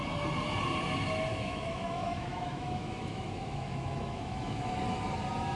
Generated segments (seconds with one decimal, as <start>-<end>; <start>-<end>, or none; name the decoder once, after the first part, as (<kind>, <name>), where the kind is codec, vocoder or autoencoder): 1.3-4.7 (autoencoder, DAC-VAE)